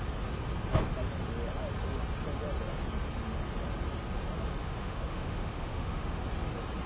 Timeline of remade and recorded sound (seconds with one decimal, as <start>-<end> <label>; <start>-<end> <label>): 0.0-4.6 recorded; 4.6-6.2 remade; 6.2-6.9 recorded